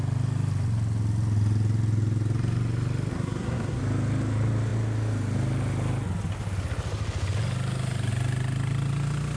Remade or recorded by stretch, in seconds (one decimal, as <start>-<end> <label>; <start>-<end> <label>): 0.0-3.1 recorded; 3.1-3.8 remade; 3.8-9.4 recorded